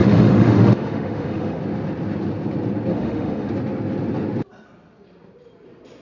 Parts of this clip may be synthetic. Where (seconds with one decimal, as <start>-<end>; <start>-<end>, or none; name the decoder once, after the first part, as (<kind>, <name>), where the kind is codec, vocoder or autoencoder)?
0.0-1.6 (autoencoder, DAC-VAE); 2.9-3.5